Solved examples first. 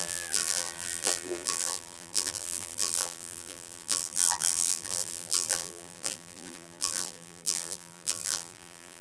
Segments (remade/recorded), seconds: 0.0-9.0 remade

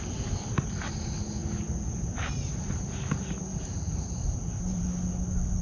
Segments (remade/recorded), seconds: 0.0-5.6 recorded

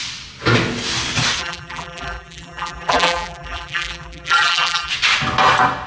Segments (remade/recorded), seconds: 0.0-1.4 recorded; 1.4-4.9 remade; 4.9-5.9 recorded

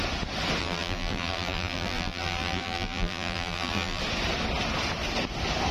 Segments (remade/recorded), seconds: 0.0-0.6 recorded; 0.6-4.0 remade; 4.0-5.7 recorded

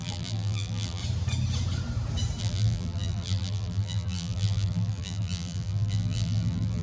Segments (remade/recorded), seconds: 0.0-1.0 remade; 1.0-2.4 recorded; 2.4-6.8 remade

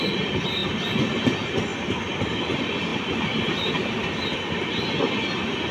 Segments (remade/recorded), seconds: 0.0-0.6 remade; 0.6-1.2 recorded; 1.2-1.7 remade; 1.7-2.4 recorded; 2.4-5.7 remade